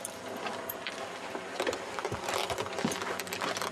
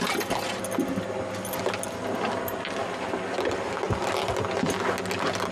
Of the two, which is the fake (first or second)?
first